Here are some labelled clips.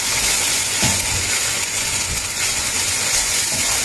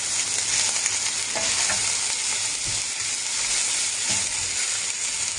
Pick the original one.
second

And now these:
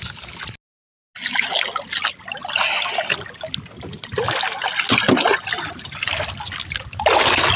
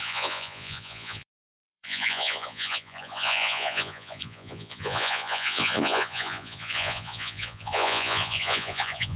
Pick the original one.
first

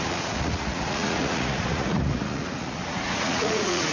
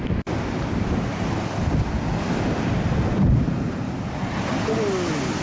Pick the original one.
second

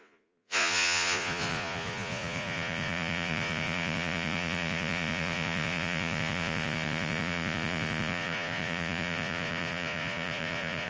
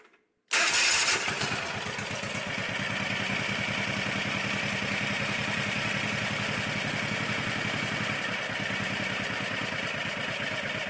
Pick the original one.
second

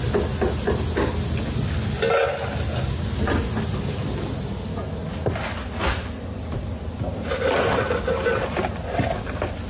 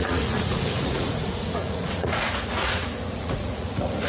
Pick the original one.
first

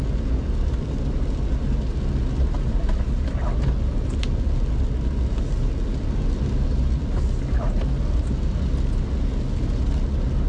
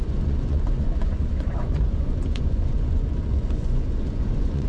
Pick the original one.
first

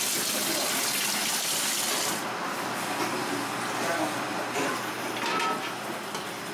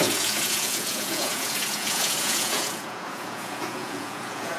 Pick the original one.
first